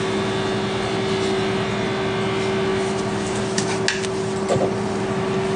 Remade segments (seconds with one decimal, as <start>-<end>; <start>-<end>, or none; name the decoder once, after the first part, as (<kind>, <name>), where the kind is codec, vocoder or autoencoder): none